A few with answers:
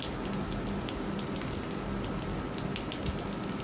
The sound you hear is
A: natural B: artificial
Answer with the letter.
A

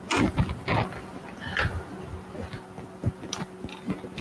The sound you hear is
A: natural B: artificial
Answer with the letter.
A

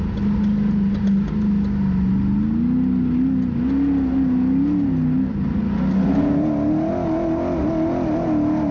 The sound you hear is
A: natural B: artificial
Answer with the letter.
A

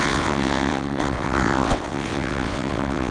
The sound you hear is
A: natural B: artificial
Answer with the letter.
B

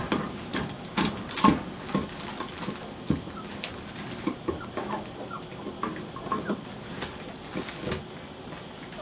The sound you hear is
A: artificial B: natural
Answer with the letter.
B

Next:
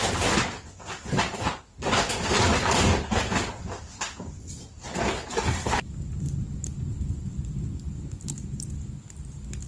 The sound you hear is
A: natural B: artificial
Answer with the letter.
A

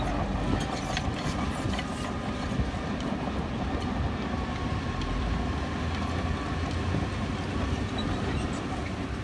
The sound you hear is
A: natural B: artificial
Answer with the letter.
A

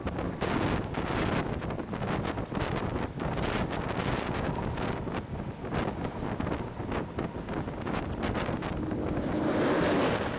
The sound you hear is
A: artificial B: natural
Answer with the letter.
B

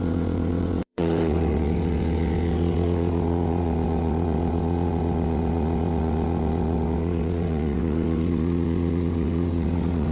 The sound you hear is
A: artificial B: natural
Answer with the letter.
A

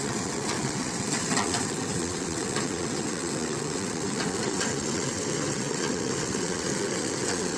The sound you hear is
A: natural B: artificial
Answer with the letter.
B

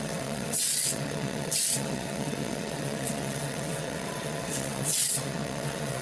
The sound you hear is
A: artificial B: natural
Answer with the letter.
A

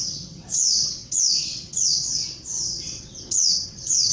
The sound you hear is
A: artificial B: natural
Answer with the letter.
A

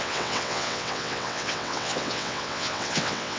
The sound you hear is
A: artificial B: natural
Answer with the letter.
A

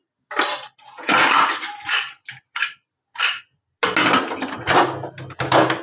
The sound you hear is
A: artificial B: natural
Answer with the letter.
B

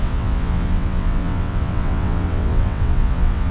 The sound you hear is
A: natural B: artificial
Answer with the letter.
B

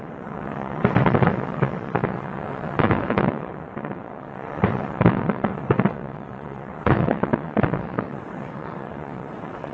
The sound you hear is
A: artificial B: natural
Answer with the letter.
A